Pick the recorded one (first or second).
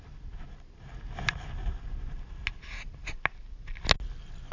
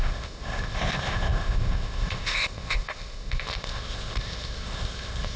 first